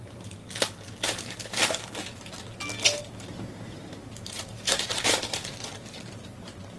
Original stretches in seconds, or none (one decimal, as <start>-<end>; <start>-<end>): 0.4-3.0; 5.4-6.1